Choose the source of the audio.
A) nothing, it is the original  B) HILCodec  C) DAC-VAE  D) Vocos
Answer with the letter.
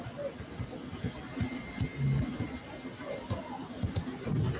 A